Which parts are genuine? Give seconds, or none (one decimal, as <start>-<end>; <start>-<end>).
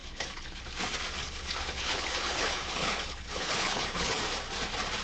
0.6-1.2; 4.2-5.0